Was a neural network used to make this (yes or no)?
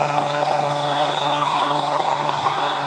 yes